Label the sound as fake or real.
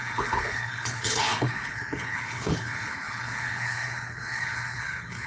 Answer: fake